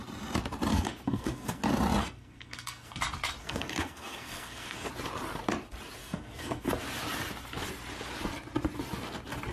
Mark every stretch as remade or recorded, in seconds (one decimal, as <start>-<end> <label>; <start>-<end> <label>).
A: 0.0-0.7 recorded; 0.7-1.6 remade; 1.6-2.0 recorded; 2.0-3.0 remade; 3.0-3.4 recorded; 3.4-4.9 remade; 4.9-6.0 recorded; 6.0-6.7 remade; 6.7-9.5 recorded